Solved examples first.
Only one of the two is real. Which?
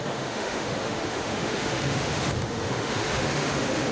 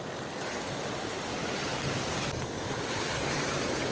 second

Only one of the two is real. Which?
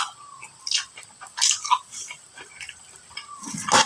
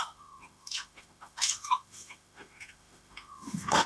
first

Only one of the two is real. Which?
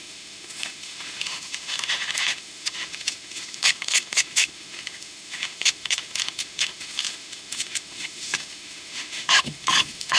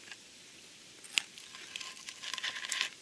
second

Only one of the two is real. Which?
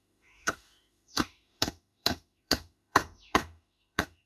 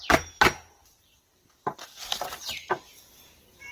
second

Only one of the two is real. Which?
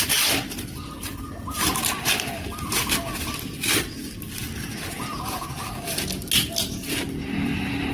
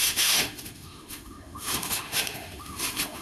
first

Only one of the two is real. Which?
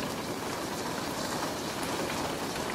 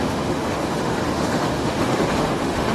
first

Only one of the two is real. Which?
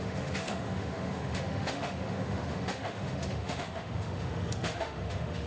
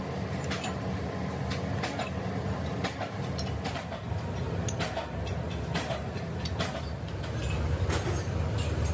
second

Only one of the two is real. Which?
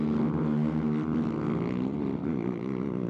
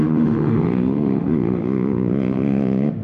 first